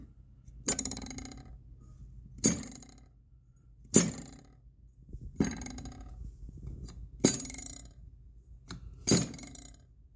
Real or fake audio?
real